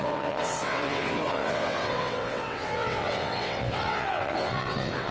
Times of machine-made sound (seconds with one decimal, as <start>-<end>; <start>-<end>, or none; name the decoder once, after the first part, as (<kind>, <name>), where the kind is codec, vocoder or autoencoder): 0.0-5.1 (vocoder, WaveNeXt)